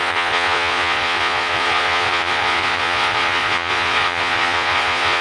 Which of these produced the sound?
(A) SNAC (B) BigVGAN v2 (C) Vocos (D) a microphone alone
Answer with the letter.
C